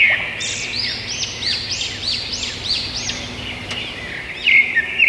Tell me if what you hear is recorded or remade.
recorded